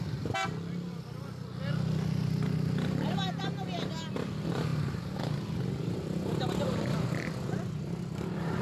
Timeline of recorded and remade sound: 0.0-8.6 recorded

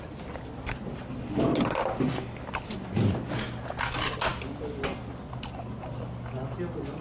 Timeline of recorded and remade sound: 0.0-7.0 recorded

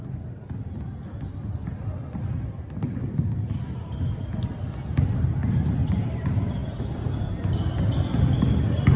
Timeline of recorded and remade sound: 0.0-9.0 recorded